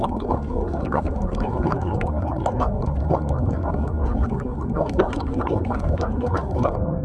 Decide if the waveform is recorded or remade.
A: remade